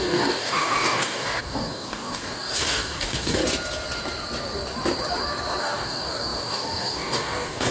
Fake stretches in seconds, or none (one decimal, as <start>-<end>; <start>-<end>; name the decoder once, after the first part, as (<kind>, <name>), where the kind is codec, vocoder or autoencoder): 0.0-3.4 (codec, DAC); 5.6-7.7